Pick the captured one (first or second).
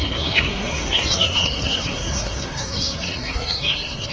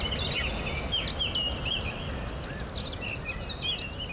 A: second